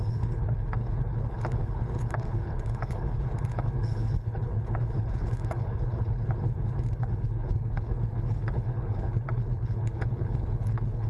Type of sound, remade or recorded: remade